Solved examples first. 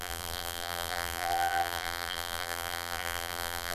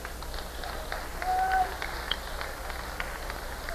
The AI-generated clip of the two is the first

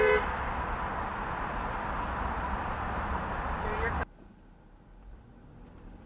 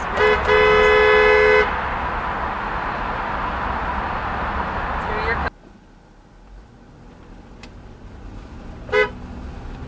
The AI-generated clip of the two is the first